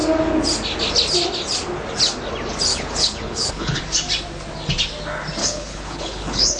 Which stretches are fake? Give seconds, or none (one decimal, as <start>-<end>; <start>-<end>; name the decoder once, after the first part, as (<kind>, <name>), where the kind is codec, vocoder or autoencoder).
2.7-3.8 (codec, HILCodec); 5.4-6.6